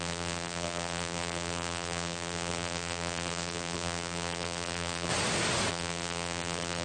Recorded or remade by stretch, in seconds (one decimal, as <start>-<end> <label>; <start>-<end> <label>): 0.0-5.1 remade; 5.1-5.7 recorded; 5.7-6.8 remade